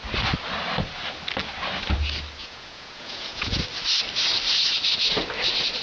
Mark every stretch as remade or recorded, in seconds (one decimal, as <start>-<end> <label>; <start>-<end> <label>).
0.0-2.4 recorded; 2.4-3.6 remade; 3.6-5.8 recorded